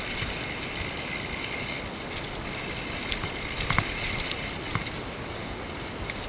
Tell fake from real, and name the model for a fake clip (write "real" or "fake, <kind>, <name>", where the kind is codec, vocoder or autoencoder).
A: real